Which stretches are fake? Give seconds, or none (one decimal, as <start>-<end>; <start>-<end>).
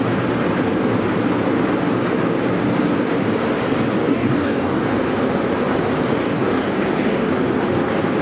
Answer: 4.0-4.8; 6.2-7.3